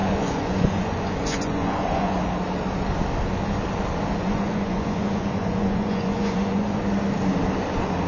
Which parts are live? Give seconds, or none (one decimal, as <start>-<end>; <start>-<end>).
2.2-4.2; 6.8-8.1